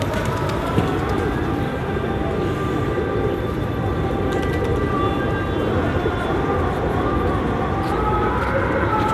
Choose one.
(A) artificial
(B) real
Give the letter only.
B